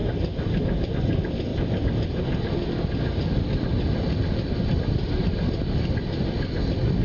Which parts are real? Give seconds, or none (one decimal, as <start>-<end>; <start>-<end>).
0.0-7.0